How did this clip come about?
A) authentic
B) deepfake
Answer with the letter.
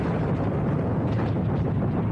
A